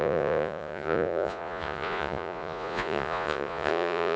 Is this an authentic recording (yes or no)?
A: no